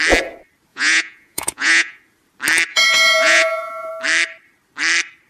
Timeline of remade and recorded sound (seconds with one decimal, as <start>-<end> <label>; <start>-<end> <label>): 0.0-0.7 recorded; 0.7-2.0 remade; 2.0-2.7 recorded; 2.7-3.9 remade; 3.9-5.3 recorded